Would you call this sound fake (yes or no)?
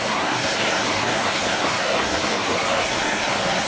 yes